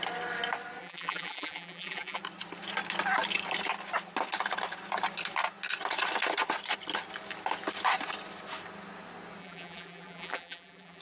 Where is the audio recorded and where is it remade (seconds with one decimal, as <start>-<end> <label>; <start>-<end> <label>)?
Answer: 0.0-0.8 recorded; 0.8-2.2 remade; 2.2-9.4 recorded; 9.4-11.0 remade

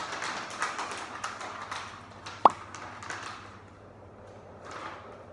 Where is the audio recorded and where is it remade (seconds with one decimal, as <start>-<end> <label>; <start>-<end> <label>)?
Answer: 0.0-3.2 recorded; 3.2-5.3 remade

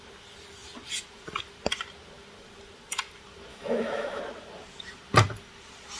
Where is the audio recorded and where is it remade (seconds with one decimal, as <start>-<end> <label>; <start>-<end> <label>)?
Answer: 0.0-3.5 recorded; 3.5-4.2 remade; 4.2-6.0 recorded

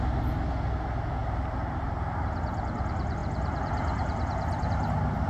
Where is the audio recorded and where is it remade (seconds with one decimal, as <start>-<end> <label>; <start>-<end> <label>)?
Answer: 0.0-1.2 recorded; 1.2-1.9 remade; 1.9-5.3 recorded

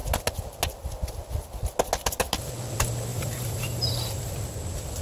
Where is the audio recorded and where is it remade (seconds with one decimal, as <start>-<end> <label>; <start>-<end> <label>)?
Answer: 0.0-3.1 recorded; 3.1-4.3 remade; 4.3-5.0 recorded

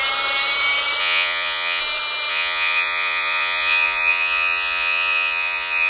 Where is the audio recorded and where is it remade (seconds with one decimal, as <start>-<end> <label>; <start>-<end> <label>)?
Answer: 0.0-1.0 recorded; 1.0-1.8 remade; 1.8-2.3 recorded; 2.3-5.9 remade